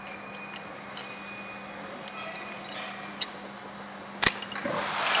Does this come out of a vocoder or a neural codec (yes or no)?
no